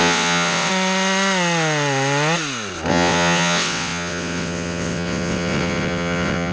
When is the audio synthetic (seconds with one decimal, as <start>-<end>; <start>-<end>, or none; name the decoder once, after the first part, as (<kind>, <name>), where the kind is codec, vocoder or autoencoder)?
0.0-0.7 (vocoder, WaveNeXt); 2.9-6.5